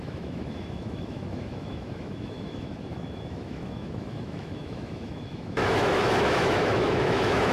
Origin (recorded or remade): remade